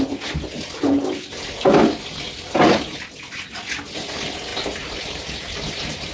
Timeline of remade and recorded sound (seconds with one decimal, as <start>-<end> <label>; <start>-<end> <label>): 0.0-4.5 recorded; 4.5-6.1 remade